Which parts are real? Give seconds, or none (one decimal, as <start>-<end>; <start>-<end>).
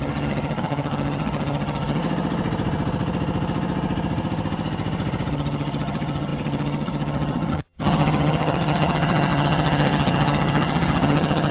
2.0-5.3